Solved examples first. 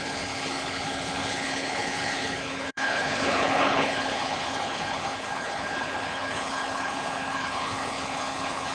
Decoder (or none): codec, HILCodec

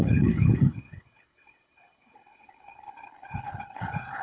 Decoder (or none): codec, HILCodec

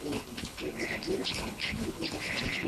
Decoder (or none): codec, HILCodec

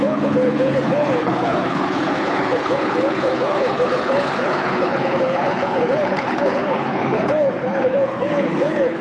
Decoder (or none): codec, HILCodec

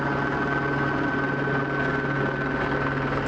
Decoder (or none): none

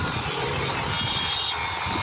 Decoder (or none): none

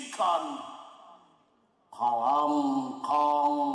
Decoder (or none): none